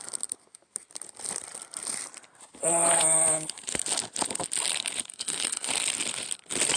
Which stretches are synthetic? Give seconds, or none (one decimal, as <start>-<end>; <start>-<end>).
5.1-5.7